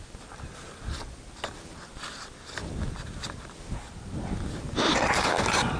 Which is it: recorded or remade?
recorded